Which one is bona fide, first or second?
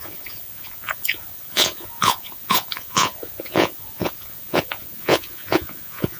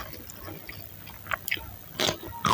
second